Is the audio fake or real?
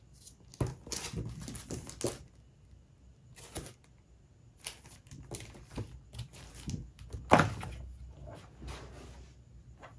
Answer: real